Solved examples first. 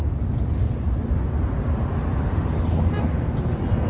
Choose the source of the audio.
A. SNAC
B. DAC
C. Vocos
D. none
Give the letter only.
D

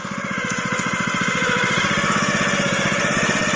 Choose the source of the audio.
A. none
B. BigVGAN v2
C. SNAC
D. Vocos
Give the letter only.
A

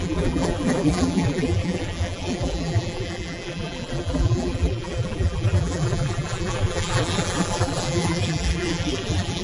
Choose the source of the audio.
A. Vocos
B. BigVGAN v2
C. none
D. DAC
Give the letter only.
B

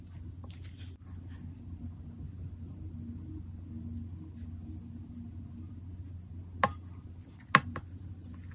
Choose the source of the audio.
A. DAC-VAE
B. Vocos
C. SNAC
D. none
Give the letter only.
D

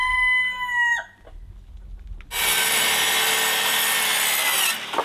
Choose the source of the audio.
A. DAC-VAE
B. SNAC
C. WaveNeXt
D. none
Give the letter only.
D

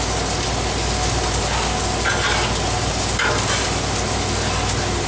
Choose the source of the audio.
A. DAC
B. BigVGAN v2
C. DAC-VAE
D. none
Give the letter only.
D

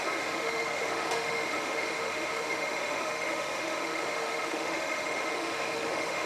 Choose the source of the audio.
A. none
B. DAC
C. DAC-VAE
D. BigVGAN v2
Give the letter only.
C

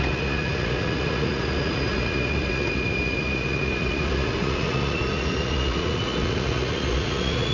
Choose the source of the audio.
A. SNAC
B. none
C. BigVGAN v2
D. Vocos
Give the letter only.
D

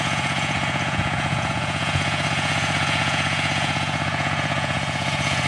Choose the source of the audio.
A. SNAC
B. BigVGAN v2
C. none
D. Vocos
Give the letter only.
D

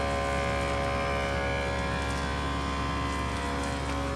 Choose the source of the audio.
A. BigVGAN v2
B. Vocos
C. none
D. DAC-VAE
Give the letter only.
C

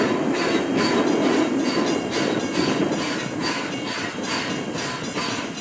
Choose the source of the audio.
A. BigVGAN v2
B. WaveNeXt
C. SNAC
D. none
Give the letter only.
D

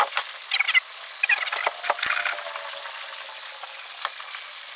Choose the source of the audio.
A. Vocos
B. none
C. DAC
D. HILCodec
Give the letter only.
B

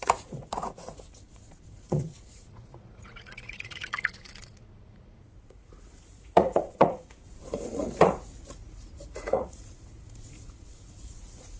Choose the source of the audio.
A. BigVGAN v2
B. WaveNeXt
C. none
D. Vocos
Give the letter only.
D